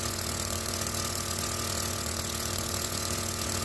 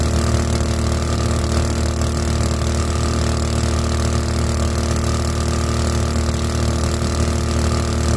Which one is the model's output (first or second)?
first